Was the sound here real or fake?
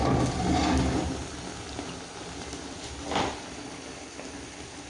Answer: real